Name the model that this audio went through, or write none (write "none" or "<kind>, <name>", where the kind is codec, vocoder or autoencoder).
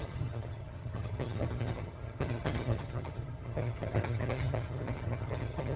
vocoder, HiFi-GAN